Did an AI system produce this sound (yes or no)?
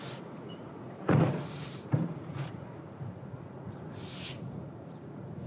yes